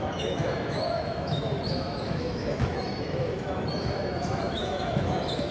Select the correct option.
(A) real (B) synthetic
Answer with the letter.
B